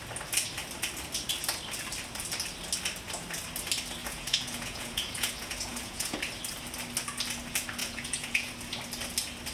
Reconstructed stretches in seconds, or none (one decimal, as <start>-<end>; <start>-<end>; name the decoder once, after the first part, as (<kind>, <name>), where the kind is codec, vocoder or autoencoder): 4.0-6.2 (vocoder, Vocos); 7.8-8.5